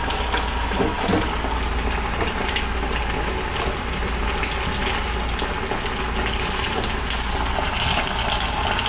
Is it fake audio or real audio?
real